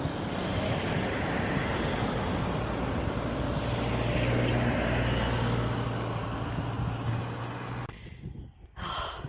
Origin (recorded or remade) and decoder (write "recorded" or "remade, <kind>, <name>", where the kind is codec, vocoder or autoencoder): recorded